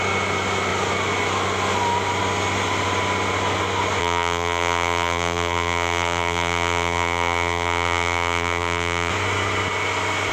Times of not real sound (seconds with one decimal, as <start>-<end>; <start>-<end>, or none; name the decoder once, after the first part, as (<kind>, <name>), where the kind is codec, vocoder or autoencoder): 4.0-9.1 (vocoder, BigVGAN v2)